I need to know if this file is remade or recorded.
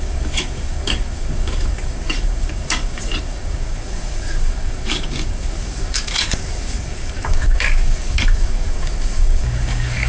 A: remade